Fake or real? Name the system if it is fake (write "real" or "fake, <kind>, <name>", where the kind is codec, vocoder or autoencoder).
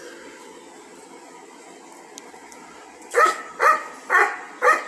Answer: real